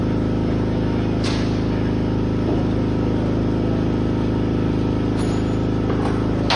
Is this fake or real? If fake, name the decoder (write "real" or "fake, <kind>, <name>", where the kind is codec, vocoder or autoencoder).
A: real